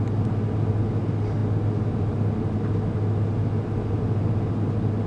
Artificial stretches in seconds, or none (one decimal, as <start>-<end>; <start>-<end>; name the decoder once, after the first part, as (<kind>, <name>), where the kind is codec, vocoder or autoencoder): none